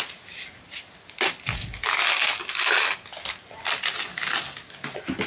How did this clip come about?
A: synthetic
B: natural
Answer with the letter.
B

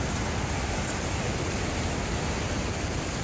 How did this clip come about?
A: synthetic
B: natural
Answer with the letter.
B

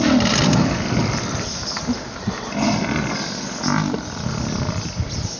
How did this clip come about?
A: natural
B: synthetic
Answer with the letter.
A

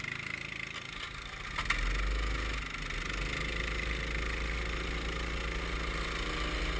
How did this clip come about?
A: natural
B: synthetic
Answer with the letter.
A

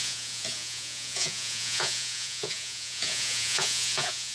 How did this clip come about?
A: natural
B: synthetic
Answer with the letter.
B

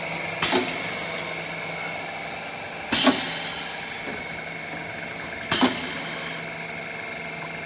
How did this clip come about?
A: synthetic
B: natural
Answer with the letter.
B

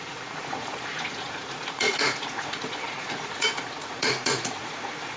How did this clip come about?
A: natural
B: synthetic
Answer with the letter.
B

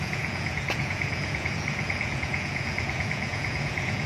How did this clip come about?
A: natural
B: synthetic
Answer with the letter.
B